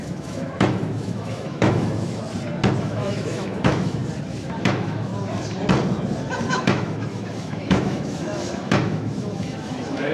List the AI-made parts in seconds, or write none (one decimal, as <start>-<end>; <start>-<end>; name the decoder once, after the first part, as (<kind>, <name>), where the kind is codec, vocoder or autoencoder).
0.0-2.2 (autoencoder, DAC-VAE); 2.8-4.0; 4.6-5.1; 6.5-10.1